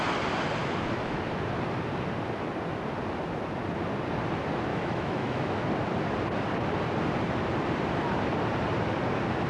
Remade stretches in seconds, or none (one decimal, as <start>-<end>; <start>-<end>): 0.6-1.2; 4.7-5.6